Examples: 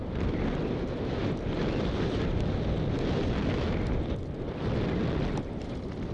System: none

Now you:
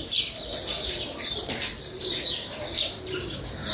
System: none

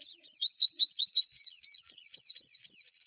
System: vocoder, Vocos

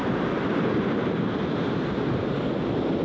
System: none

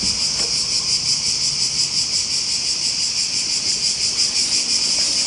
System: none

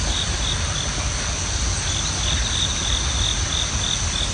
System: none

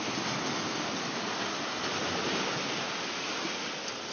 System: none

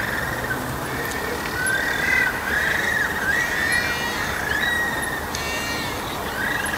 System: none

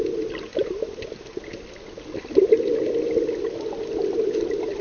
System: none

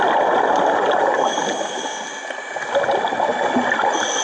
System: none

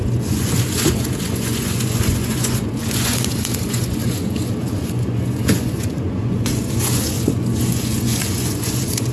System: vocoder, Vocos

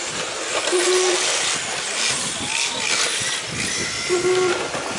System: none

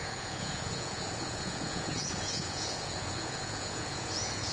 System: vocoder, Vocos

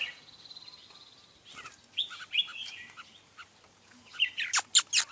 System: none